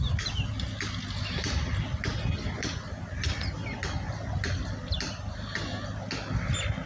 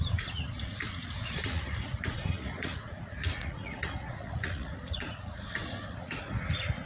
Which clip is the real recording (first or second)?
first